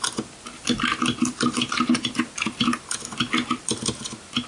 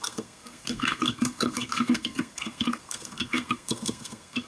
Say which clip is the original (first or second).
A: first